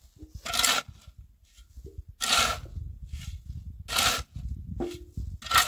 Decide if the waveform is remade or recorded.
recorded